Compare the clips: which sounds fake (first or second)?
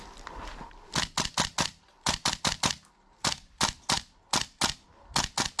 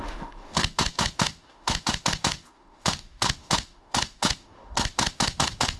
second